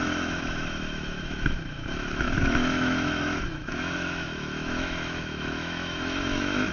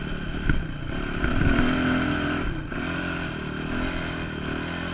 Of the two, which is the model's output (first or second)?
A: first